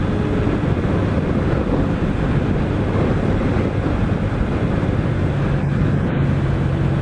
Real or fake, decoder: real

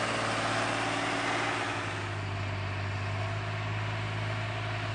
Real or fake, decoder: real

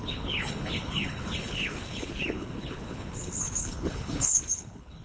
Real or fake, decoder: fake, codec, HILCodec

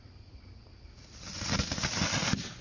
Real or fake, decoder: real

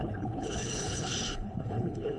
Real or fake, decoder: fake, codec, HILCodec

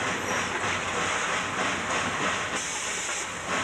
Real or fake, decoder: real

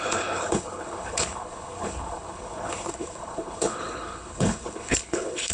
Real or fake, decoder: fake, codec, HILCodec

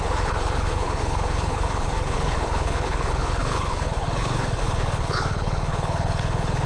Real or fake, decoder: fake, codec, HILCodec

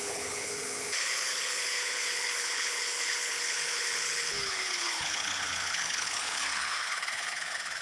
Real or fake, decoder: fake, codec, HILCodec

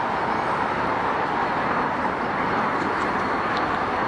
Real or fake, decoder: real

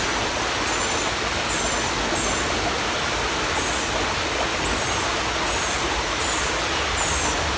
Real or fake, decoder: real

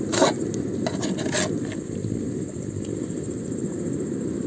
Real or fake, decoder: real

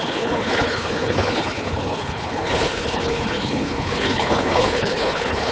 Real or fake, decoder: fake, codec, HILCodec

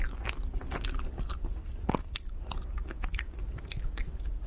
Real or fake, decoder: real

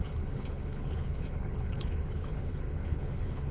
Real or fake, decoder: fake, codec, HILCodec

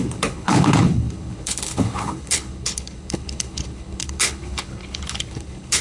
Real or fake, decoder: fake, codec, HILCodec